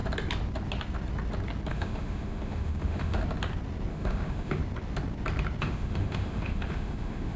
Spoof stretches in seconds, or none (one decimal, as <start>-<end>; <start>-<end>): 1.7-3.2; 3.9-4.6; 5.6-7.4